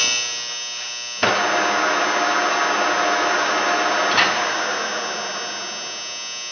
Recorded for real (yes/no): yes